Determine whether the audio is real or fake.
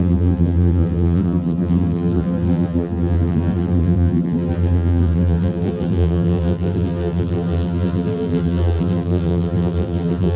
fake